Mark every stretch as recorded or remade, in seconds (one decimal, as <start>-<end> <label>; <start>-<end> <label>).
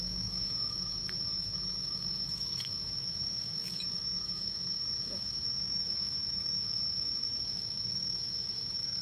0.0-9.0 remade